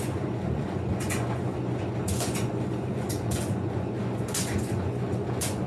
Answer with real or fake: fake